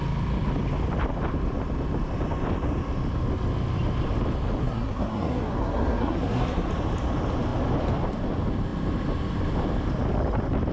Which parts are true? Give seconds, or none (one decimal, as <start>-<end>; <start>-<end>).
0.0-4.6; 6.7-10.7